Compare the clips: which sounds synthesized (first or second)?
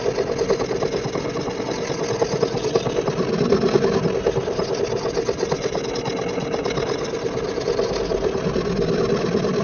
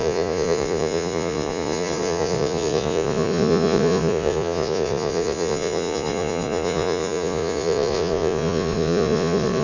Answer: second